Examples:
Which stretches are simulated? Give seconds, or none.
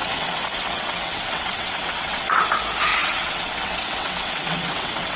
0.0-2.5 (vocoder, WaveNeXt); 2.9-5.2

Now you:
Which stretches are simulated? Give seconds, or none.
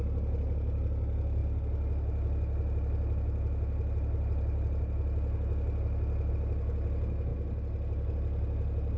none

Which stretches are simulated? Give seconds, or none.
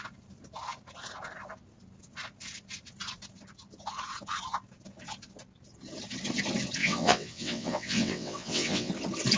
6.8-8.9 (vocoder, WaveNeXt)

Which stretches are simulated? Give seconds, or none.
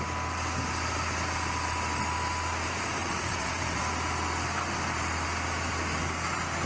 3.0-3.8 (vocoder, WaveNeXt)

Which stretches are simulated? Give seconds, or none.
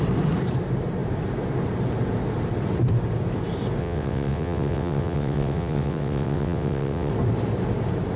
3.8-7.1 (vocoder, WaveNeXt)